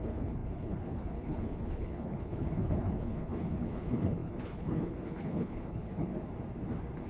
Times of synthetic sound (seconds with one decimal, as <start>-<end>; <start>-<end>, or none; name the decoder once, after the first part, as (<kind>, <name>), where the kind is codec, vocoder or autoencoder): 0.0-6.1 (codec, HILCodec)